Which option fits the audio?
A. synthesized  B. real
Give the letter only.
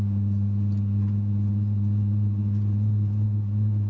B